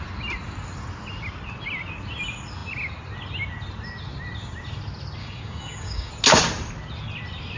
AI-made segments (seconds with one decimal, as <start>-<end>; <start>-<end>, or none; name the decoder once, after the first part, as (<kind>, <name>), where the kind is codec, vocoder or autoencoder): 5.2-6.1 (codec, DAC)